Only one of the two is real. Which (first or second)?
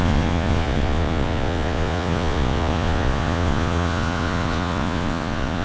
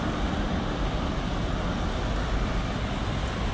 second